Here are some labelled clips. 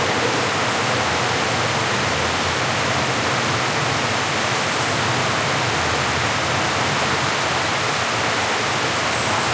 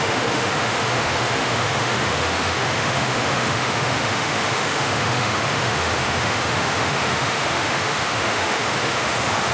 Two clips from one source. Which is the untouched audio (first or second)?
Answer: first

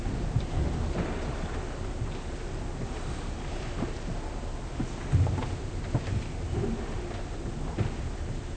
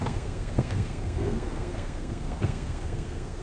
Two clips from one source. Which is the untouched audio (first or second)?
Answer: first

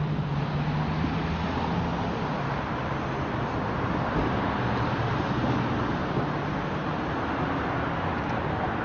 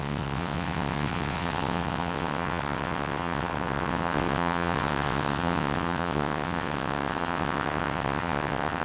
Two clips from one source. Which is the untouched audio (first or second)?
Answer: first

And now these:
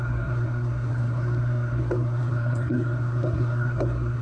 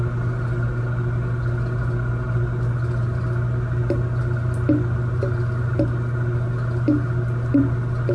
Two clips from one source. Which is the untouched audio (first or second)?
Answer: second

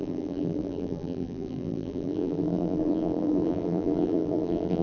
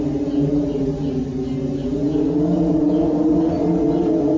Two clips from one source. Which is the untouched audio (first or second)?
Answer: second